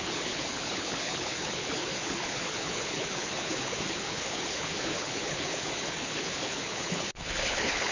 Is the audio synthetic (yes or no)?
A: yes